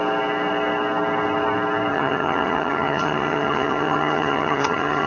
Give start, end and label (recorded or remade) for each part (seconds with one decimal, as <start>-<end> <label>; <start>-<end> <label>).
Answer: 0.0-1.9 recorded; 1.9-5.1 remade